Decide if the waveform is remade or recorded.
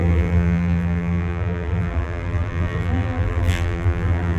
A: remade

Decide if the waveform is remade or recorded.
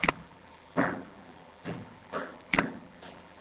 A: remade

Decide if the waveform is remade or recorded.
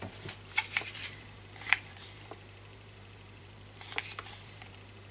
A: remade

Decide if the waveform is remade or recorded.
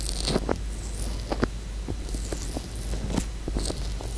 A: recorded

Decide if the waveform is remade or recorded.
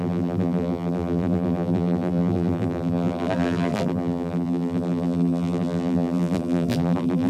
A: remade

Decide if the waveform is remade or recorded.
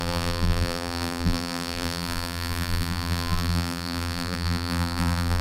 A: remade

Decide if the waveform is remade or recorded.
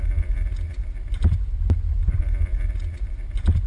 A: recorded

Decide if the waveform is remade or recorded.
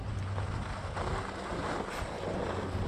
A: recorded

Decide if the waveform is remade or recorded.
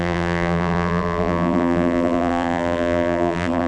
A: remade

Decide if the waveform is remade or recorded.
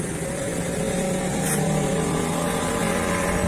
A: remade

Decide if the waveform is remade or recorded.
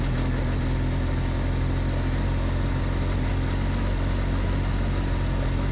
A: recorded